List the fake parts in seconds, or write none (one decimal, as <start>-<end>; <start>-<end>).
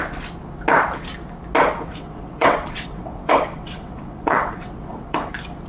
1.9-5.3